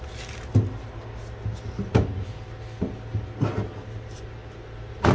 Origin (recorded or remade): recorded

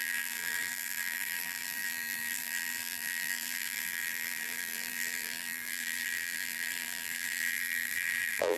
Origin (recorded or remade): remade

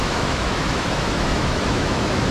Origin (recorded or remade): remade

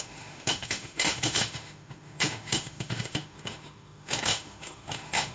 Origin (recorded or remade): remade